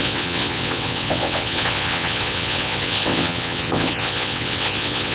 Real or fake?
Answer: fake